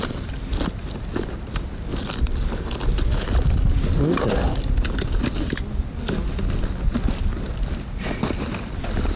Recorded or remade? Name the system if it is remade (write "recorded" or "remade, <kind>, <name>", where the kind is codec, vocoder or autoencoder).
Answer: recorded